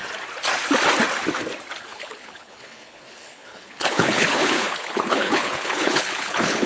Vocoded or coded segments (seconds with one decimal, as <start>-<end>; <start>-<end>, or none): 1.8-6.7